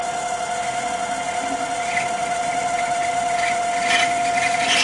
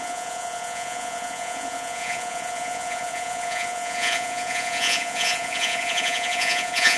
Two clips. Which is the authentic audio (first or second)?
first